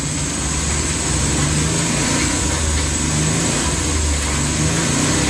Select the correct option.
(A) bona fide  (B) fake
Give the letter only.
A